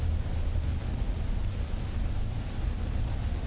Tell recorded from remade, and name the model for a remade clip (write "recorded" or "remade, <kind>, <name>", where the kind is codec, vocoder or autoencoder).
recorded